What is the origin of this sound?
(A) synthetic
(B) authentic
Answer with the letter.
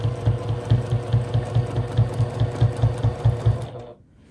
B